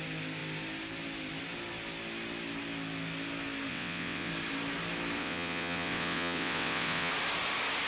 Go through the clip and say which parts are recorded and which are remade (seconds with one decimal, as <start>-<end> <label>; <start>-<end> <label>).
0.0-3.7 recorded; 3.7-4.3 remade; 4.3-5.2 recorded; 5.2-7.1 remade; 7.1-7.9 recorded